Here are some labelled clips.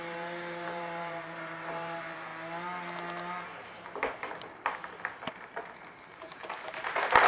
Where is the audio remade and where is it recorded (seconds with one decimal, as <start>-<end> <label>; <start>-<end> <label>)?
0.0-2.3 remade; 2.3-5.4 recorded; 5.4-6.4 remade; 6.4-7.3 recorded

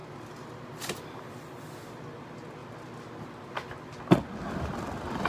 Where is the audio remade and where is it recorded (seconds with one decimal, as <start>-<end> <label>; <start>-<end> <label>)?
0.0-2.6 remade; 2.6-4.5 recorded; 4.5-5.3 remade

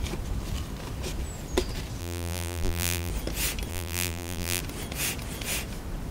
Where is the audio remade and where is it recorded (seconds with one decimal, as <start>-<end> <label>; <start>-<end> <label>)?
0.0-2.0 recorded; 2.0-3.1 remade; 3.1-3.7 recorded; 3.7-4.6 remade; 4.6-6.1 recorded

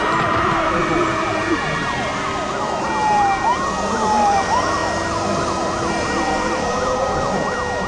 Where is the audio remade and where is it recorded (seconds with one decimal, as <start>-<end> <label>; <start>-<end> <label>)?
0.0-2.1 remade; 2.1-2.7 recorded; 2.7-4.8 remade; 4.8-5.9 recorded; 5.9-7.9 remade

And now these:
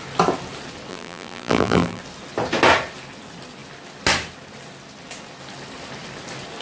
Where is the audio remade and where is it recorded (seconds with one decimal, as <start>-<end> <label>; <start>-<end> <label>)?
0.0-0.9 recorded; 0.9-2.0 remade; 2.0-6.6 recorded

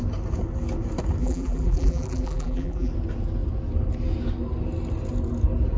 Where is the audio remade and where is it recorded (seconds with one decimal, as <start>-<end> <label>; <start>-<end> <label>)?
0.0-1.2 recorded; 1.2-2.9 remade; 2.9-5.8 recorded

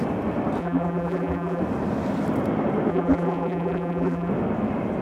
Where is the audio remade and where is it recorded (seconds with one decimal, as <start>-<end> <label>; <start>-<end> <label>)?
0.0-0.6 recorded; 0.6-1.6 remade; 1.6-2.9 recorded; 2.9-4.3 remade; 4.3-5.0 recorded

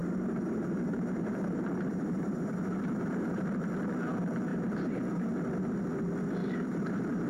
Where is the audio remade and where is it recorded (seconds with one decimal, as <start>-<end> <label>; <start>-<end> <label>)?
0.0-3.4 remade; 3.4-4.5 recorded; 4.5-5.0 remade; 5.0-6.4 recorded; 6.4-7.3 remade